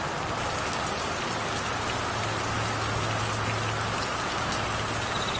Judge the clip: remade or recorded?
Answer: recorded